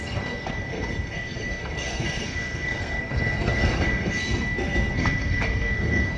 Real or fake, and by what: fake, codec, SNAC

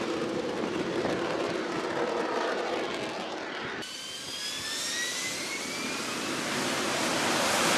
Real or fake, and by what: real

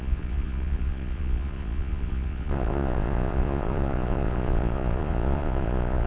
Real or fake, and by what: fake, vocoder, Vocos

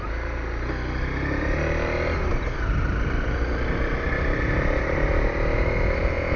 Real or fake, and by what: real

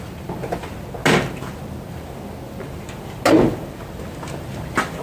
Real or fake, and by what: real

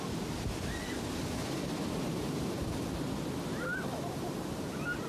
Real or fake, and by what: real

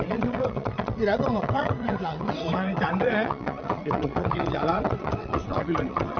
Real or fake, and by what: fake, vocoder, WaveNeXt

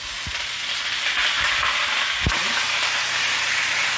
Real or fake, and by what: real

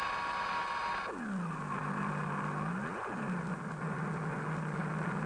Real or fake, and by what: real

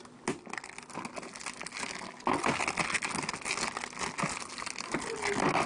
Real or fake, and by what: real